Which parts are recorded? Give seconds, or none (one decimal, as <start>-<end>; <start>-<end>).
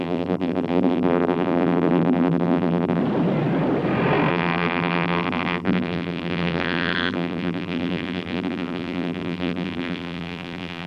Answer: 3.0-4.3